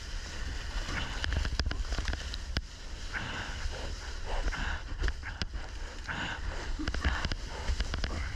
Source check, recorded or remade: recorded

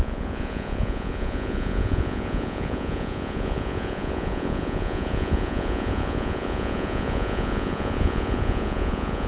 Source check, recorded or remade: remade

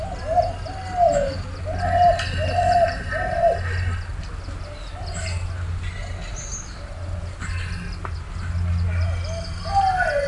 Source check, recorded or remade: recorded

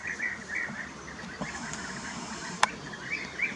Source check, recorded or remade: recorded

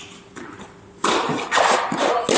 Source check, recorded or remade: recorded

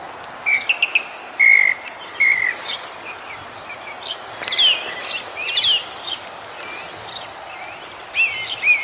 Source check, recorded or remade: recorded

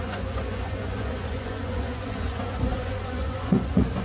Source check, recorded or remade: remade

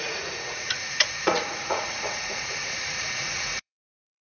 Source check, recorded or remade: remade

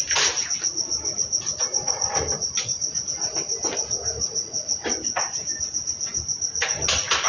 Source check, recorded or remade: recorded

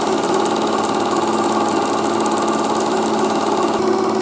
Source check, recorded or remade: recorded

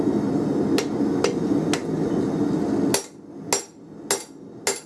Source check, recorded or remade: recorded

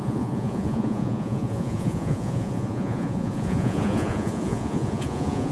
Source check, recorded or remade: remade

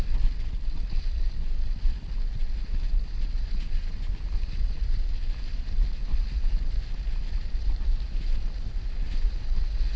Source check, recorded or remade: recorded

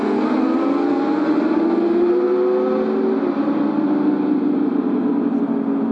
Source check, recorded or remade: recorded